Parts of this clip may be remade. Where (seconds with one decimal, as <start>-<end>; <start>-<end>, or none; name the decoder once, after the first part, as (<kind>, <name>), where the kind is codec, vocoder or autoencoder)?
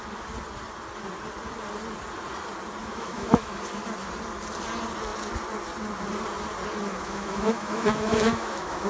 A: 2.8-3.6 (autoencoder, DAC-VAE); 6.9-8.9